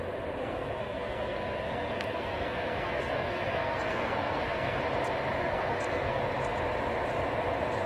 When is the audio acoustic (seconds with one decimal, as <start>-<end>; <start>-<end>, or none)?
0.0-0.4; 4.8-5.4; 6.2-7.9